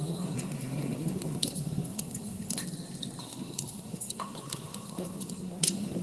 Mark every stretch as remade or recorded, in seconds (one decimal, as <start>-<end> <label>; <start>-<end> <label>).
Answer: 0.0-2.6 remade; 2.6-3.2 recorded; 3.2-6.0 remade